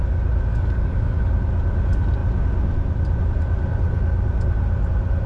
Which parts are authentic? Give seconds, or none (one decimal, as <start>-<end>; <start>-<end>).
0.0-0.5; 1.3-5.3

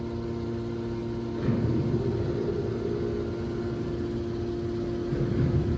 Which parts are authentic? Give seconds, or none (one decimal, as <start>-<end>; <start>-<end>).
0.0-5.8

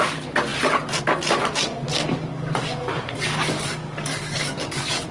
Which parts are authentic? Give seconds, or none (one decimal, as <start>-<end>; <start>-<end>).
0.0-1.9

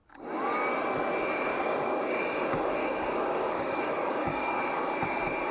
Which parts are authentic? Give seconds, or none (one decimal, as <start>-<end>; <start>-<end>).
0.0-1.5; 2.2-2.8; 4.6-5.5

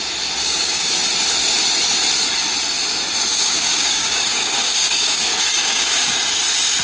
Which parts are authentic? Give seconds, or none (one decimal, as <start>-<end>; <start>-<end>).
0.0-0.4; 0.9-3.3; 6.1-6.8

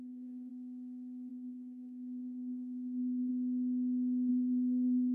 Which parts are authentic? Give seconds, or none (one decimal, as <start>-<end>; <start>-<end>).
0.5-1.3; 3.3-4.3

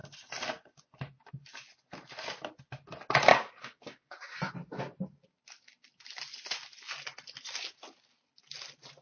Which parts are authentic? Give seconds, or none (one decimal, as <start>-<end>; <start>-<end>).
0.0-3.3; 4.5-9.0